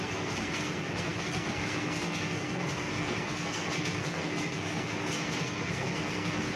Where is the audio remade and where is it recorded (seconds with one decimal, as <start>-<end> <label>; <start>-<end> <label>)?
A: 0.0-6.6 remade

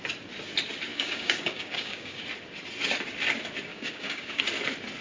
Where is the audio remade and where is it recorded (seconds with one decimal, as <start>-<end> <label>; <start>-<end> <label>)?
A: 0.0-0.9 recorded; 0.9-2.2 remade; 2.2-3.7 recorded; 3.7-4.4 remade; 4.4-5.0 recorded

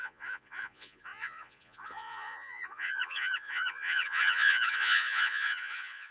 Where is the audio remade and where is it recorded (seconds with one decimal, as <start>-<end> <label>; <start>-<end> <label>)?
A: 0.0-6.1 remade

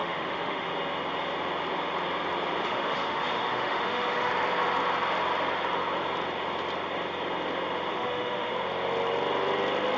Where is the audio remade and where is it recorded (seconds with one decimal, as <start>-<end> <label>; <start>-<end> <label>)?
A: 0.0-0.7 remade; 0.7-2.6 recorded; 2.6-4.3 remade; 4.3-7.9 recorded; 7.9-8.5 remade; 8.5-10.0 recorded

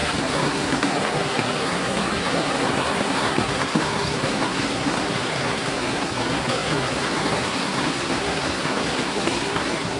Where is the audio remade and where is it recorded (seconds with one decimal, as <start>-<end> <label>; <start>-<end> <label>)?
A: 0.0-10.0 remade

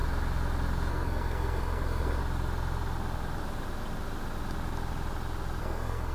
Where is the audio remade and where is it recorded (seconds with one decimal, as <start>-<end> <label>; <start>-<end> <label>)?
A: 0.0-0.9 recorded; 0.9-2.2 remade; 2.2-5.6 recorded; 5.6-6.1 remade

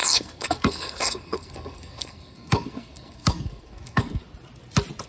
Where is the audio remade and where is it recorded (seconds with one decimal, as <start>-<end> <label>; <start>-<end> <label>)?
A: 0.0-4.2 remade; 4.2-5.1 recorded